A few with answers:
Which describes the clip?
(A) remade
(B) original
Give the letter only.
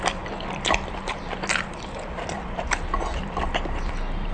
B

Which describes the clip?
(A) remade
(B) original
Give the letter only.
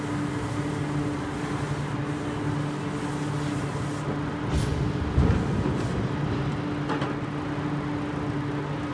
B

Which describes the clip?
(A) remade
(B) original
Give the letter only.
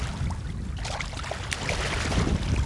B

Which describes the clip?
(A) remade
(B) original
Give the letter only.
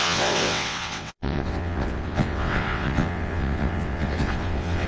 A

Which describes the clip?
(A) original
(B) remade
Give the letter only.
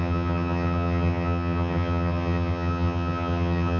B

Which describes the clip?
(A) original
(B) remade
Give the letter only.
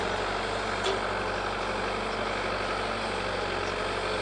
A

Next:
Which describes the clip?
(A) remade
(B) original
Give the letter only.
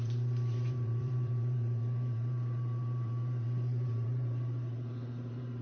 A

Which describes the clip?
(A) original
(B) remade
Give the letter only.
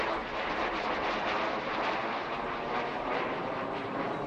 A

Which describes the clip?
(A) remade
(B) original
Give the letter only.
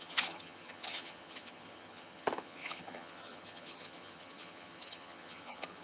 A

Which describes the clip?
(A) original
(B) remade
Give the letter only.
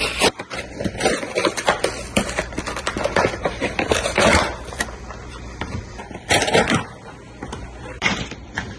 B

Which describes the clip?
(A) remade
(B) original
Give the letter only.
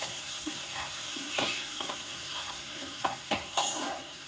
A